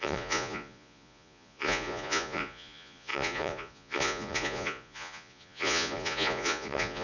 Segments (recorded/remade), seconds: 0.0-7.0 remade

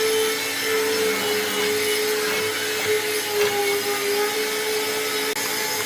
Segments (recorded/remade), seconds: 0.0-5.9 recorded

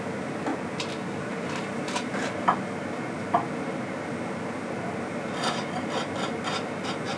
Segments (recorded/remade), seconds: 0.0-7.2 recorded

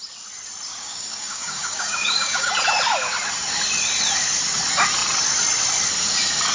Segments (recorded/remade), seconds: 0.0-0.7 recorded; 0.7-2.5 remade; 2.5-6.5 recorded